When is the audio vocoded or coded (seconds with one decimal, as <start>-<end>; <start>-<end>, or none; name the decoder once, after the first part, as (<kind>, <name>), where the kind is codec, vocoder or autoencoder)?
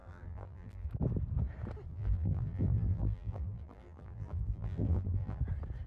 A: 0.0-0.9 (vocoder, BigVGAN v2); 1.9-5.4